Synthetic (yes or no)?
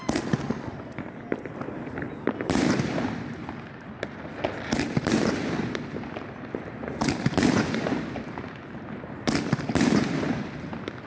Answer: yes